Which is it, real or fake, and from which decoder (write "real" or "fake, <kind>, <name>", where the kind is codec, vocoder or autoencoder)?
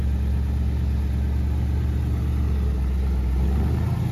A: real